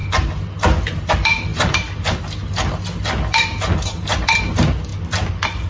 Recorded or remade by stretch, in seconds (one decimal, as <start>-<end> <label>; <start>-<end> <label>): 0.0-5.7 recorded